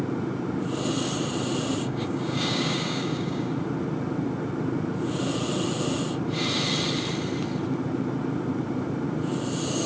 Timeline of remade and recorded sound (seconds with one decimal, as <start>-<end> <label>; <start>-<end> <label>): 0.0-1.8 recorded; 1.8-3.5 remade; 3.5-9.9 recorded